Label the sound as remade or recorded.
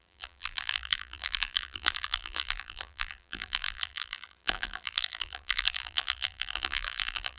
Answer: remade